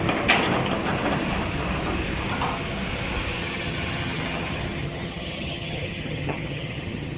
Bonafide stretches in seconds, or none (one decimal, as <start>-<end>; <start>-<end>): 0.0-3.4